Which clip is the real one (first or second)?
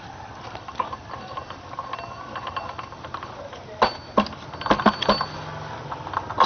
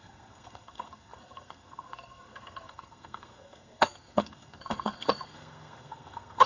first